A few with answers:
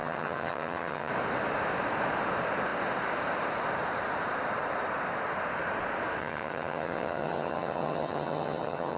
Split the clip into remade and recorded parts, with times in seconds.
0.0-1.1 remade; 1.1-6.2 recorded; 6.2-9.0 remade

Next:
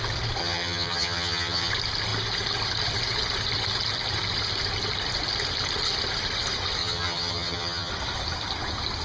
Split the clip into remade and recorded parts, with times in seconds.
0.0-0.4 recorded; 0.4-1.7 remade; 1.7-6.8 recorded; 6.8-7.9 remade; 7.9-9.0 recorded

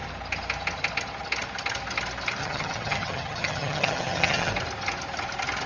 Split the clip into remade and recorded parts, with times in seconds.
0.0-2.4 recorded; 2.4-4.5 remade; 4.5-5.7 recorded